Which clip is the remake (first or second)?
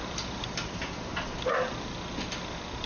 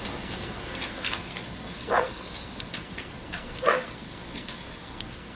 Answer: second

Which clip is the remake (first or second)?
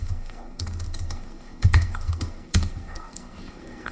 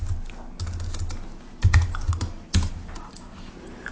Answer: first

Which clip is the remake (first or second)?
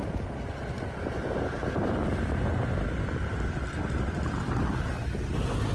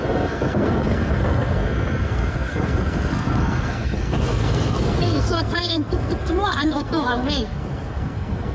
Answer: second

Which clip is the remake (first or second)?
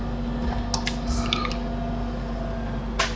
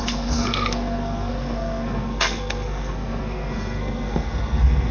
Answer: second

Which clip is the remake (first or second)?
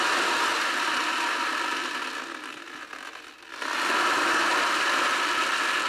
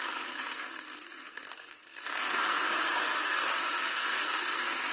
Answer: second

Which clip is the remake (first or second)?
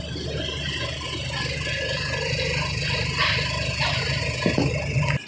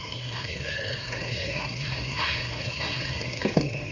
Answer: second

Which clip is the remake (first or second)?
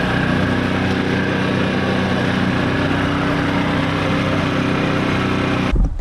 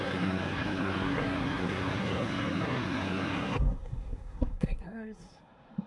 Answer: second